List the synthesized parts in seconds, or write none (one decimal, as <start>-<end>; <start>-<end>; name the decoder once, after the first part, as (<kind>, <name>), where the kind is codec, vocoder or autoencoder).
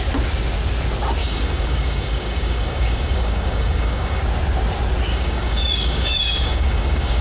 1.2-4.2 (codec, DAC); 5.1-7.2